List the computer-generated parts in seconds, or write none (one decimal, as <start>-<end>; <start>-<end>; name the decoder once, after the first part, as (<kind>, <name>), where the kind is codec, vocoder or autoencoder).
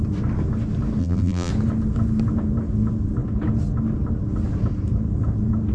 1.0-1.5 (vocoder, BigVGAN v2)